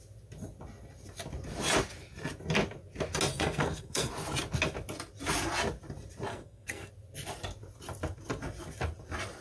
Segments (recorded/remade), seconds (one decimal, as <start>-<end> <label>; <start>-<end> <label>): 0.0-3.3 recorded; 3.3-4.1 remade; 4.1-6.3 recorded; 6.3-6.9 remade; 6.9-9.4 recorded